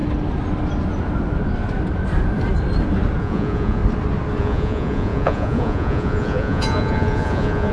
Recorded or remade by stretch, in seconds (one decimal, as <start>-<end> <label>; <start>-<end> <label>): 0.0-3.2 recorded; 3.2-3.8 remade; 3.8-4.4 recorded; 4.4-7.7 remade